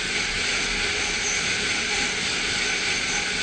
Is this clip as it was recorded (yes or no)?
yes